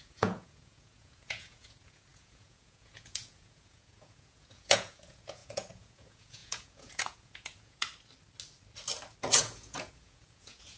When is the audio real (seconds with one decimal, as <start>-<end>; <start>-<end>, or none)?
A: 7.9-9.4

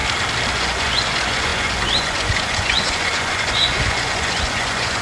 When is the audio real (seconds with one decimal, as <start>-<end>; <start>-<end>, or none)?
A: 0.0-0.5

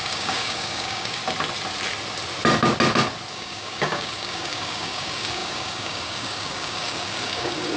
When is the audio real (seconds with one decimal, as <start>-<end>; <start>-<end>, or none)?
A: 1.2-3.3

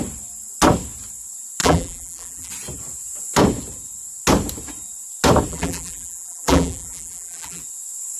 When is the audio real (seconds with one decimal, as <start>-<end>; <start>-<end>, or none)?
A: 0.0-1.6; 2.5-5.5; 7.6-8.2

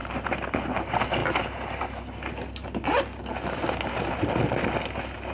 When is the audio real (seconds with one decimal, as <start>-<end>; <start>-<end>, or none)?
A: 0.0-5.3